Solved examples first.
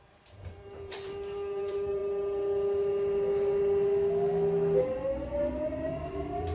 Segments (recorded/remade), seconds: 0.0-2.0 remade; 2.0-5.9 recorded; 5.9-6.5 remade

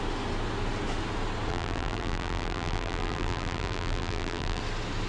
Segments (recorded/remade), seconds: 0.0-1.5 recorded; 1.5-4.6 remade; 4.6-5.1 recorded

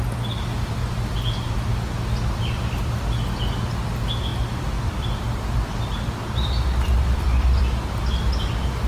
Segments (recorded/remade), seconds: 0.0-4.3 recorded; 4.3-8.2 remade; 8.2-8.9 recorded

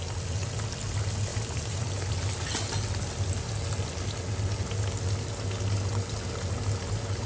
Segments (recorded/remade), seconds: 0.0-1.3 recorded; 1.3-2.0 remade; 2.0-7.3 recorded

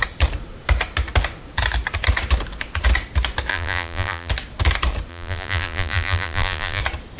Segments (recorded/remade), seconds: 0.0-3.5 recorded; 3.5-4.3 remade; 4.3-5.1 recorded; 5.1-6.8 remade; 6.8-7.2 recorded

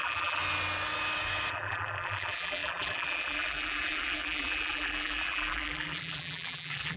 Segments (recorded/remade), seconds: 0.0-0.4 remade; 0.4-1.5 recorded; 1.5-7.0 remade

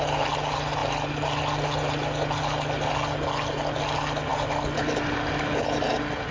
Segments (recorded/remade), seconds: 0.0-6.3 recorded